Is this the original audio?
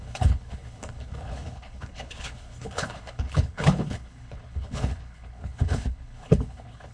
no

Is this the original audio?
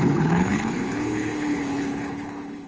no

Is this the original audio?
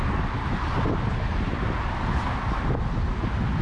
yes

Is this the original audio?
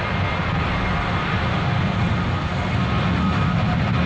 yes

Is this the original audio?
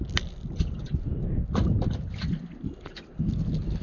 yes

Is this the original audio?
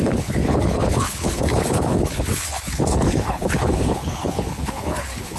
no